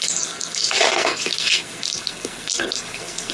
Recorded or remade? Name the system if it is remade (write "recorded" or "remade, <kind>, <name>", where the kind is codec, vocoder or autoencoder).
remade, codec, SNAC